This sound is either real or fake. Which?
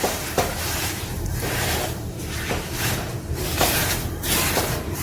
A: fake